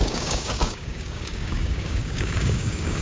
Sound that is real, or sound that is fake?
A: fake